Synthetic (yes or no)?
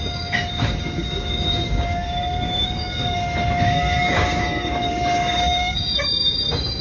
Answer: yes